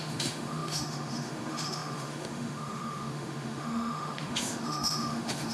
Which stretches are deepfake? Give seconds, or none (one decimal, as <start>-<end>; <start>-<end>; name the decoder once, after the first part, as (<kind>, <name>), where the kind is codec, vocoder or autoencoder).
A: 0.0-5.5 (autoencoder, DAC-VAE)